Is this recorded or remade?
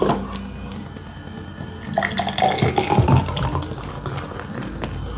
recorded